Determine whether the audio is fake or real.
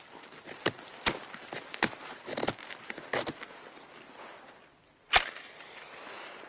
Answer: real